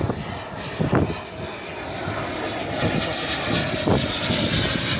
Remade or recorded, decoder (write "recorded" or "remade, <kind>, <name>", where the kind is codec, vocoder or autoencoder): recorded